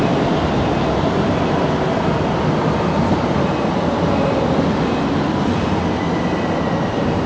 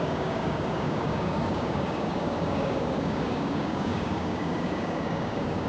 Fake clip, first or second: second